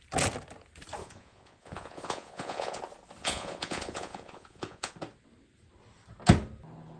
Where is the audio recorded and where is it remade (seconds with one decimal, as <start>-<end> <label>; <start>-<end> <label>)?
0.0-1.0 recorded; 1.0-2.8 remade; 2.8-3.2 recorded; 3.2-4.9 remade; 4.9-7.0 recorded